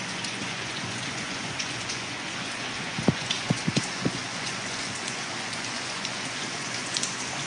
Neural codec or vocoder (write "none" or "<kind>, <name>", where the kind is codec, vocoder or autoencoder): vocoder, Vocos